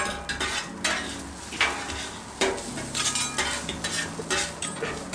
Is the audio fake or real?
real